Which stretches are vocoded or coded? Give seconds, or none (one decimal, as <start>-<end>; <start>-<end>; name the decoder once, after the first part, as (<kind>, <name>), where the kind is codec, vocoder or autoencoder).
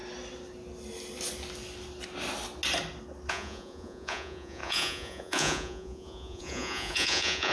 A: 3.3-7.5 (vocoder, Vocos)